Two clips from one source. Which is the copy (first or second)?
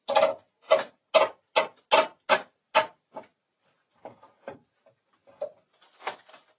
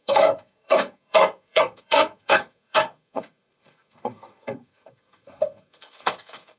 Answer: second